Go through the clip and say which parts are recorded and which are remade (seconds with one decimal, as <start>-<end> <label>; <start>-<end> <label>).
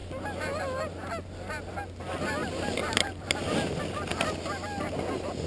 0.0-2.4 recorded; 2.4-3.7 remade; 3.7-5.5 recorded